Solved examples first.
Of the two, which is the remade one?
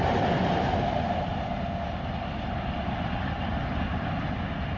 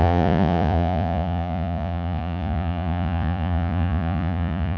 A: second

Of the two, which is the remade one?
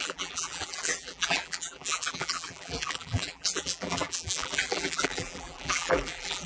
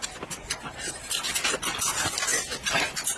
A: first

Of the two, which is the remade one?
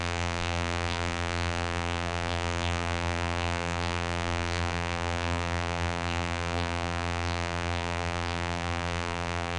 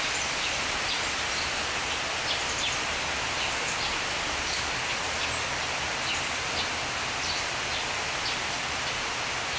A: first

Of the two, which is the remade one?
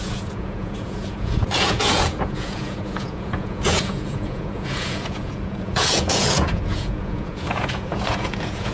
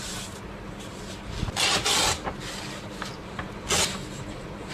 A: first